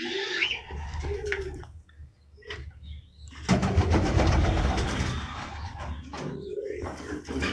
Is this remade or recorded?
remade